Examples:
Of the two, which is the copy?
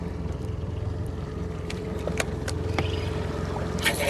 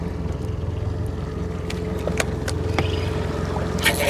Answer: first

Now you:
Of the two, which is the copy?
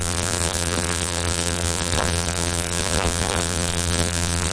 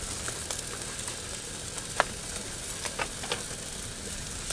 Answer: first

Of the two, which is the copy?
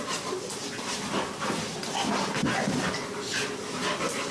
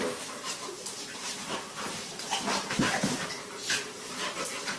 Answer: second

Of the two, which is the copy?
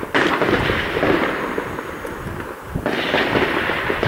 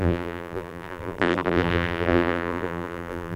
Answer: second